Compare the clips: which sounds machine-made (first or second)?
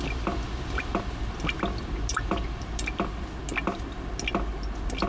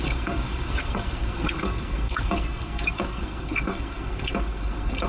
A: second